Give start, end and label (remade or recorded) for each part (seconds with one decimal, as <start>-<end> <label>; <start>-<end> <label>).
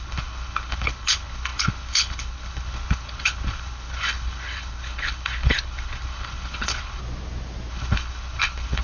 0.0-7.0 remade; 7.0-7.7 recorded; 7.7-8.8 remade